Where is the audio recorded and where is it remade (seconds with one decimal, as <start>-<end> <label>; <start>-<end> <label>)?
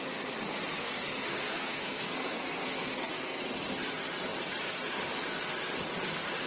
0.0-0.8 recorded; 0.8-3.4 remade; 3.4-6.5 recorded